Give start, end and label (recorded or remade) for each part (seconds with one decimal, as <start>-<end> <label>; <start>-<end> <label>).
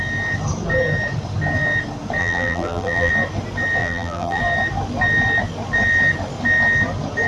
0.0-2.2 recorded; 2.2-3.1 remade; 3.1-3.8 recorded; 3.8-4.4 remade; 4.4-7.3 recorded